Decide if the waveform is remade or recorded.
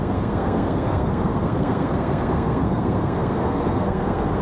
remade